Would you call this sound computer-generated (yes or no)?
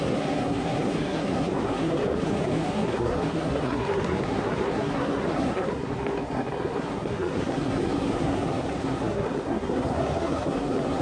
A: yes